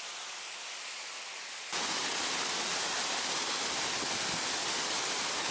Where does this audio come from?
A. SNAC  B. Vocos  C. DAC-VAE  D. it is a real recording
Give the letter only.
D